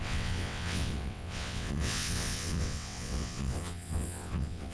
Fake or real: fake